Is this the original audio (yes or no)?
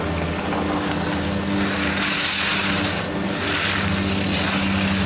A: yes